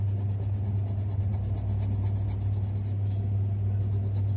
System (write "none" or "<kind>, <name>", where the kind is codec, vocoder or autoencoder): none